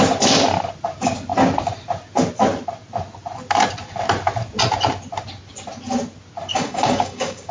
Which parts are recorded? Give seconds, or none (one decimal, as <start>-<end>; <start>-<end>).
0.0-6.5